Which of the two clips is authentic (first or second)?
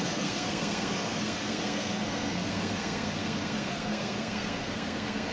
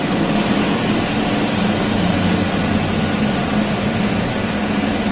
second